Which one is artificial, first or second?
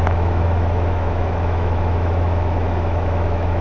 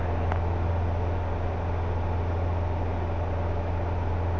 first